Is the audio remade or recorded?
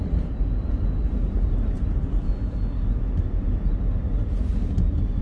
recorded